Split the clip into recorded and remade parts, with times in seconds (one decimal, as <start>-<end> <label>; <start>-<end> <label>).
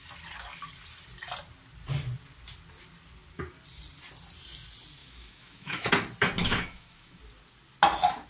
0.0-5.0 recorded; 5.0-5.9 remade; 5.9-6.4 recorded; 6.4-7.2 remade; 7.2-8.3 recorded